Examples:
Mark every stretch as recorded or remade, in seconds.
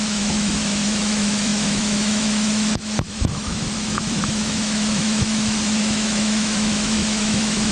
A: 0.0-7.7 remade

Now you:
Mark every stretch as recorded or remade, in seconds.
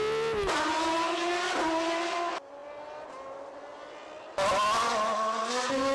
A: 0.0-5.9 recorded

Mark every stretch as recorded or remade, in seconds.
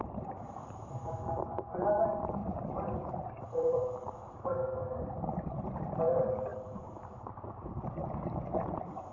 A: 0.0-8.0 remade; 8.0-9.1 recorded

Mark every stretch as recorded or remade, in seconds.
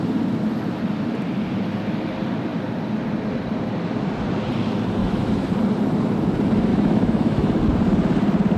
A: 0.0-5.0 recorded; 5.0-5.5 remade; 5.5-6.7 recorded; 6.7-7.6 remade; 7.6-8.6 recorded